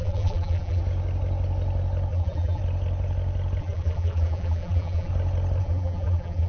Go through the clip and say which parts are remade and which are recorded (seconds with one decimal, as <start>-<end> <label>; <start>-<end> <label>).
0.0-0.8 remade; 0.8-2.1 recorded; 2.1-2.6 remade; 2.6-3.6 recorded; 3.6-5.1 remade; 5.1-5.6 recorded; 5.6-6.5 remade